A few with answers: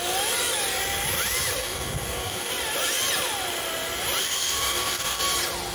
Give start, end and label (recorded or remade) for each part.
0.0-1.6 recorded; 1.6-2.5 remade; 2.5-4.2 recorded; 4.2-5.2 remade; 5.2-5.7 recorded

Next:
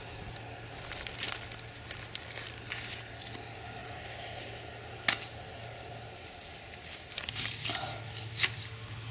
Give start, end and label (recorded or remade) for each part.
0.0-9.1 recorded

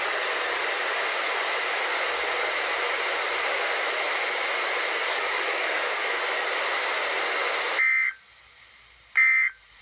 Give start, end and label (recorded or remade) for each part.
0.0-5.0 recorded; 5.0-6.0 remade; 6.0-9.8 recorded

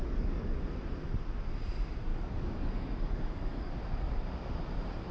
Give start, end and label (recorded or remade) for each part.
0.0-0.5 remade; 0.5-2.1 recorded; 2.1-3.7 remade; 3.7-5.1 recorded

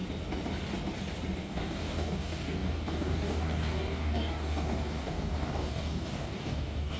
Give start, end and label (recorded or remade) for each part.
0.0-1.4 recorded; 1.4-7.0 remade

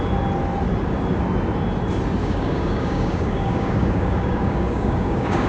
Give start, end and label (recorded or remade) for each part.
0.0-2.2 recorded; 2.2-5.5 remade

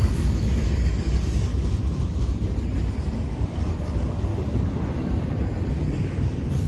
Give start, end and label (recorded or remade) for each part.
0.0-1.5 remade; 1.5-3.3 recorded; 3.3-4.3 remade; 4.3-5.7 recorded; 5.7-6.7 remade

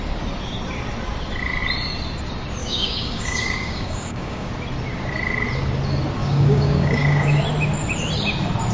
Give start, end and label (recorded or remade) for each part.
0.0-2.6 recorded; 2.6-4.5 remade; 4.5-6.2 recorded; 6.2-7.4 remade; 7.4-8.7 recorded